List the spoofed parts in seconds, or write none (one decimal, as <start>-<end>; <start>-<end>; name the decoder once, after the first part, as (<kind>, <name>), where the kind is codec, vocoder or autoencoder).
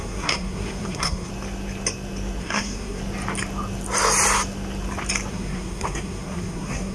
0.0-1.3 (codec, SNAC); 2.4-3.0; 5.3-6.9